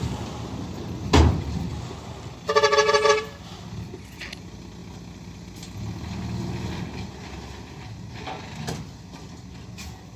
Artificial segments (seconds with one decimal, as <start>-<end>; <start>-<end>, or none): 1.7-3.4